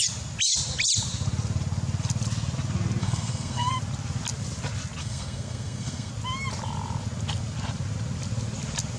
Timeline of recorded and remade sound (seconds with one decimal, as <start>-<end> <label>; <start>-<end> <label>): 0.0-3.0 recorded; 3.0-3.7 remade; 3.7-5.0 recorded; 5.0-6.1 remade; 6.1-9.0 recorded